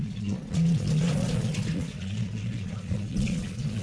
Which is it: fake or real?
fake